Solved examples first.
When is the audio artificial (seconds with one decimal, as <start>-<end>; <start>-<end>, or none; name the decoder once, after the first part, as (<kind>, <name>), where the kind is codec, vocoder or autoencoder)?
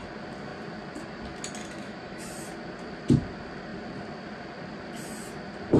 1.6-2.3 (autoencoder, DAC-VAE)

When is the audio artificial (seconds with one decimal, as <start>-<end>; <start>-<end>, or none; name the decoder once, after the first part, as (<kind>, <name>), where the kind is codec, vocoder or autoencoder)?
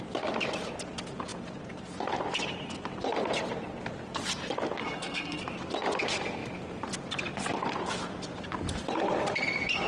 4.8-5.4 (codec, SNAC)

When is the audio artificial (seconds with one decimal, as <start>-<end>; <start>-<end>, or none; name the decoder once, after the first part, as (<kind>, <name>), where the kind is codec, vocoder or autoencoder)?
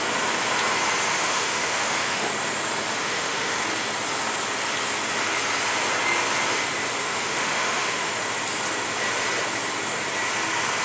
1.1-2.3 (autoencoder, DAC-VAE); 3.0-3.6; 7.0-8.1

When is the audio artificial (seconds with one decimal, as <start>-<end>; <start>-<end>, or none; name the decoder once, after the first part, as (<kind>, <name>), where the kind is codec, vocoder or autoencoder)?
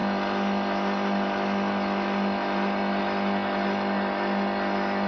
none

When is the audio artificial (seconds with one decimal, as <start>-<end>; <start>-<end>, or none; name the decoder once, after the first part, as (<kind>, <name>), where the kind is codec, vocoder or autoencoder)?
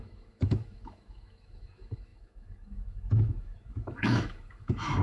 0.0-5.0 (autoencoder, DAC-VAE)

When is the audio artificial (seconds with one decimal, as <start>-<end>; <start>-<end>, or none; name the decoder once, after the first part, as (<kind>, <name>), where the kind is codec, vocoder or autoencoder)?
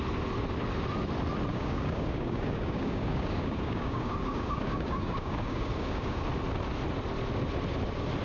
1.5-6.2 (codec, DAC)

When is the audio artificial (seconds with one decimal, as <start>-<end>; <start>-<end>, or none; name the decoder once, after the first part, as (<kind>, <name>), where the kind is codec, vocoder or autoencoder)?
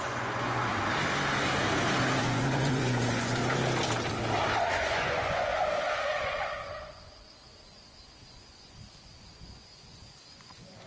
0.0-0.7 (vocoder, Vocos); 2.2-3.4; 4.6-10.9